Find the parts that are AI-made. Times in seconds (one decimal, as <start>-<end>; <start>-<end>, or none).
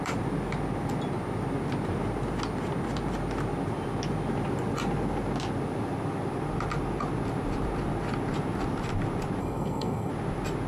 9.4-10.1